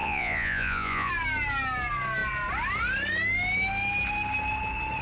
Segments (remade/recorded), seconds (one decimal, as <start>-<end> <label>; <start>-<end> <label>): 0.0-1.1 remade; 1.1-5.0 recorded